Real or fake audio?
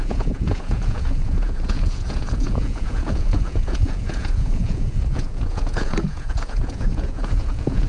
fake